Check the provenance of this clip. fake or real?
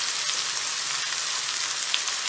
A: real